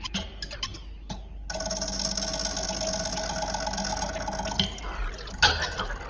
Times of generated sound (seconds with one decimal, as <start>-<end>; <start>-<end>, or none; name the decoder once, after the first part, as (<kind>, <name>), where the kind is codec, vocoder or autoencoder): none